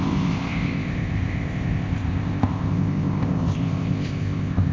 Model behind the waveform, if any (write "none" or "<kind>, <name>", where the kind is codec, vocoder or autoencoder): codec, ZipCodec